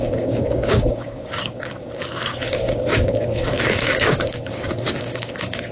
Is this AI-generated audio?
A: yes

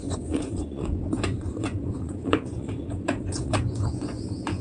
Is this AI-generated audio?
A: yes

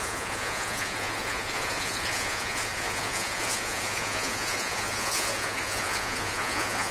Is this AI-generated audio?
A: yes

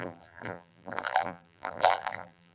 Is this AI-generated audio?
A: yes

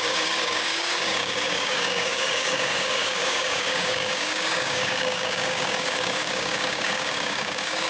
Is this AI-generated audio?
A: yes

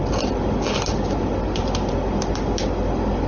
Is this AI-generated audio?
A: no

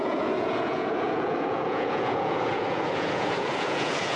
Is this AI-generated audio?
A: yes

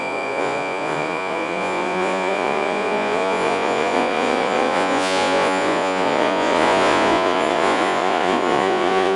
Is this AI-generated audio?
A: yes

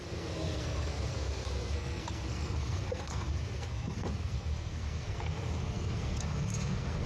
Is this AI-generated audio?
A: yes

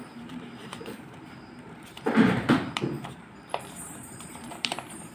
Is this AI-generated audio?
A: yes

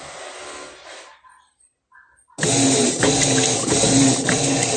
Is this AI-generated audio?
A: no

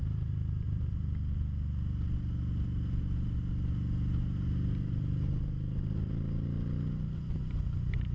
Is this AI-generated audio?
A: no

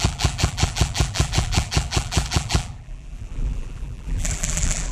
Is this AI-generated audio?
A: yes